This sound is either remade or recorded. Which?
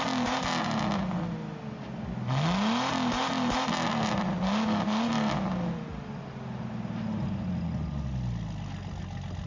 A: recorded